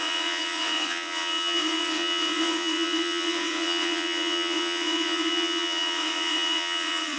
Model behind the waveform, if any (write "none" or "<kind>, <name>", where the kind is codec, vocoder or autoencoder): vocoder, WaveNeXt